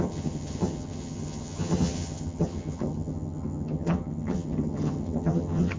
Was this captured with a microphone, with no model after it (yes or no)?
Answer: no